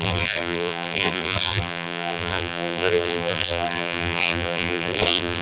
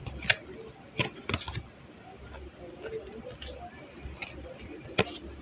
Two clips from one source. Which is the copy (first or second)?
first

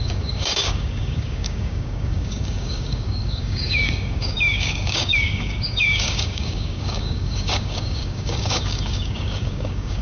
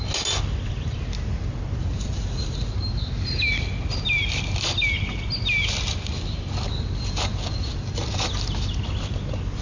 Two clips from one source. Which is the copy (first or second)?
first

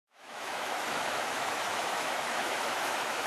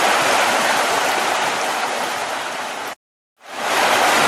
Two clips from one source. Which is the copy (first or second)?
first